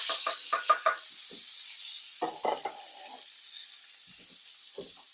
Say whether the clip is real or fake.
real